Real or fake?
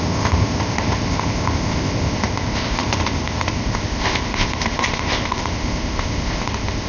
fake